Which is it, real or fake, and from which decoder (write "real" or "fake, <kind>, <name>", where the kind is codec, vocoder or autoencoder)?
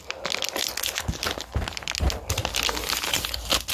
real